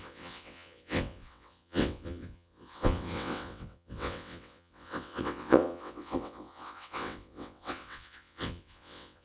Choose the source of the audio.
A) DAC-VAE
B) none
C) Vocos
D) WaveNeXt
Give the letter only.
D